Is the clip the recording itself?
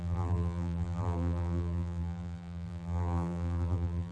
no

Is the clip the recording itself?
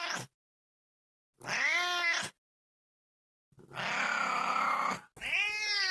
yes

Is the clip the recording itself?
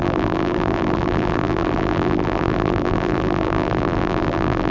no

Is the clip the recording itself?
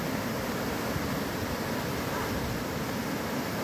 yes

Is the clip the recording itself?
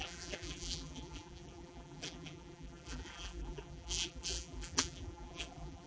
no